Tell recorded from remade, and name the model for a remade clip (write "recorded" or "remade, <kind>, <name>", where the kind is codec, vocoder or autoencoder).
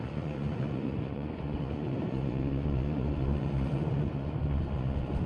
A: remade, vocoder, Vocos